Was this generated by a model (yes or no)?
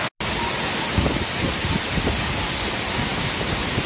no